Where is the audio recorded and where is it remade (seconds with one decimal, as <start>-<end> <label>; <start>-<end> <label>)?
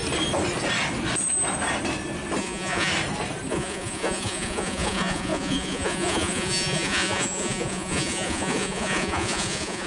0.0-2.4 recorded; 2.4-2.9 remade; 2.9-3.5 recorded; 3.5-9.9 remade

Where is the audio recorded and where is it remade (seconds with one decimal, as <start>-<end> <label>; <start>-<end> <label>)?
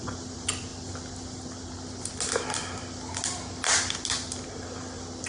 0.0-5.3 recorded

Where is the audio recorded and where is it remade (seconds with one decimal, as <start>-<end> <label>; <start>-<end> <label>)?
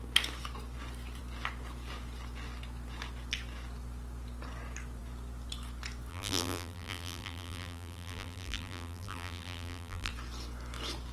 0.0-6.1 recorded; 6.1-10.1 remade; 10.1-11.1 recorded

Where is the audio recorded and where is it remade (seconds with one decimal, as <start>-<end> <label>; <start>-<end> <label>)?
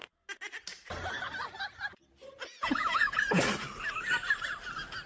0.0-2.5 recorded; 2.5-3.4 remade; 3.4-5.1 recorded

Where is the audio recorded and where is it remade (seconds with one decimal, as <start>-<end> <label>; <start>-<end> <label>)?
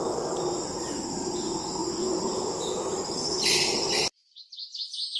0.0-5.2 recorded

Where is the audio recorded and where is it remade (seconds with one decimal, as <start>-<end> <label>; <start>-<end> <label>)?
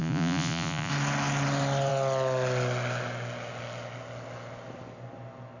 0.0-0.9 remade; 0.9-5.6 recorded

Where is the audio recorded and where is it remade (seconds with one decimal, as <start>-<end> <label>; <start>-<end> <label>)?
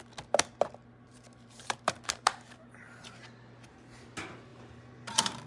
0.0-0.8 recorded; 0.8-3.2 remade; 3.2-4.5 recorded; 4.5-5.5 remade